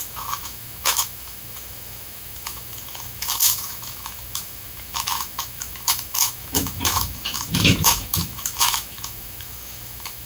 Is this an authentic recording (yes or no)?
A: no